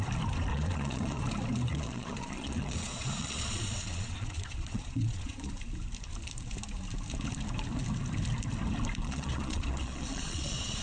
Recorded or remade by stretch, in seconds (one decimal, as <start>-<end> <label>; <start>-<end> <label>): 0.0-0.5 recorded; 0.5-1.2 remade; 1.2-1.7 recorded; 1.7-5.5 remade; 5.5-9.0 recorded; 9.0-10.8 remade

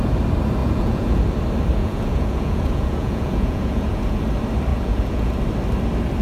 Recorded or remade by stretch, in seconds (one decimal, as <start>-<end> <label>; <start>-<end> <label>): 0.0-0.6 recorded; 0.6-1.2 remade; 1.2-1.8 recorded; 1.8-4.2 remade; 4.2-4.7 recorded; 4.7-5.3 remade; 5.3-6.2 recorded

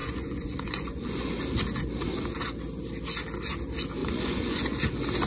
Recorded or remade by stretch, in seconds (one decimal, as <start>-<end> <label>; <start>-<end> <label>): 0.0-1.3 remade; 1.3-4.0 recorded; 4.0-4.8 remade; 4.8-5.3 recorded

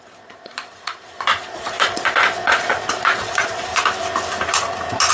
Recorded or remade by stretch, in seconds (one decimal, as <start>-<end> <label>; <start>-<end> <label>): 0.0-3.7 remade; 3.7-5.1 recorded

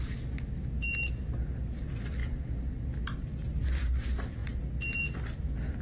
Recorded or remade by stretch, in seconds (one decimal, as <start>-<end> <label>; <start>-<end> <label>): 0.0-5.8 recorded

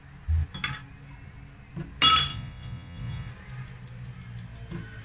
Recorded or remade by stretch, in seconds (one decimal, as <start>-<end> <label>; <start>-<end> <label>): 0.0-2.3 recorded; 2.3-3.3 remade; 3.3-5.0 recorded

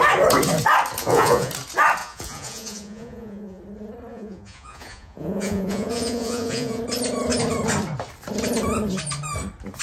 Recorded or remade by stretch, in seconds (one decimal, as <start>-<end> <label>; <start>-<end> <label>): 0.0-1.0 recorded; 1.0-1.5 remade; 1.5-2.0 recorded; 2.0-3.6 remade; 3.6-4.1 recorded; 4.1-6.8 remade; 6.8-9.8 recorded

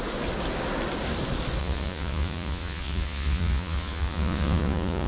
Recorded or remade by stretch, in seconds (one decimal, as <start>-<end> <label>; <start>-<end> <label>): 0.0-1.6 recorded; 1.6-5.1 remade